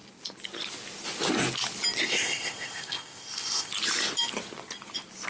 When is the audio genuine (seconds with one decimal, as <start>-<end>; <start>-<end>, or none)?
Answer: 0.0-2.1; 3.7-5.3